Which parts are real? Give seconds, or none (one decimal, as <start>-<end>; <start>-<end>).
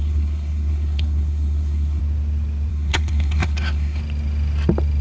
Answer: 2.0-2.7; 4.0-5.0